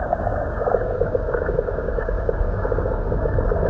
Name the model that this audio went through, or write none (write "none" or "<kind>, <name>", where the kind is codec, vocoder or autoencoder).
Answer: codec, DAC